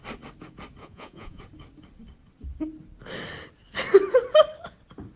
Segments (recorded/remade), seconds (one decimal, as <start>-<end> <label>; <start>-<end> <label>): 0.0-0.8 recorded; 0.8-1.4 remade; 1.4-5.2 recorded